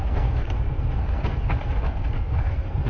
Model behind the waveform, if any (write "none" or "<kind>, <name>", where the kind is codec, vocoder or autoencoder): codec, SNAC